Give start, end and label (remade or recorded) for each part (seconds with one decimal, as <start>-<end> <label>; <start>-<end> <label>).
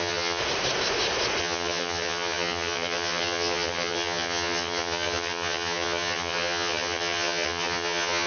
0.0-0.4 remade; 0.4-1.4 recorded; 1.4-8.3 remade